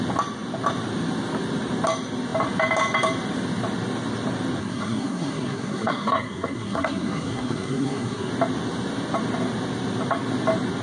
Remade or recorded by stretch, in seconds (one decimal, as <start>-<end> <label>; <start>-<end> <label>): 0.0-4.6 recorded; 4.6-8.3 remade; 8.3-10.8 recorded